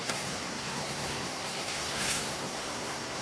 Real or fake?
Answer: fake